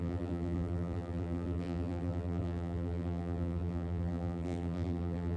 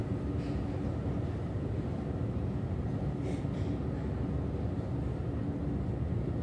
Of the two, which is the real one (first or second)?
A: second